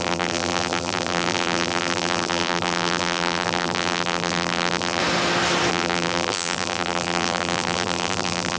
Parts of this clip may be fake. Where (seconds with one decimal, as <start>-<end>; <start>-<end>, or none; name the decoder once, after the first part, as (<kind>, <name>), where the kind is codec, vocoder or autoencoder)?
0.0-5.0 (vocoder, BigVGAN v2); 5.7-8.6